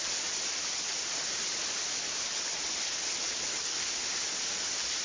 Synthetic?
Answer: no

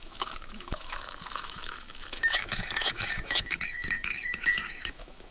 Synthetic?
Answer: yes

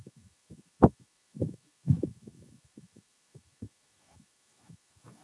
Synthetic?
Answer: yes